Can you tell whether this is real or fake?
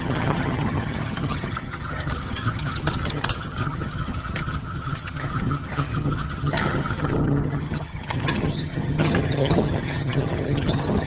fake